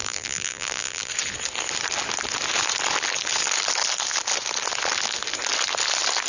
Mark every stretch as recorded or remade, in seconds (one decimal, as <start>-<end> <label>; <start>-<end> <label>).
0.0-1.1 remade; 1.1-6.3 recorded